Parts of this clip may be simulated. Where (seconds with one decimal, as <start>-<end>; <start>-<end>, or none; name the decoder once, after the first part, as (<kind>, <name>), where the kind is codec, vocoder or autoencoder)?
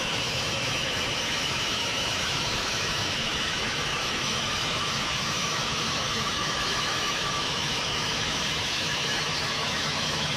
0.0-10.4 (autoencoder, DAC-VAE)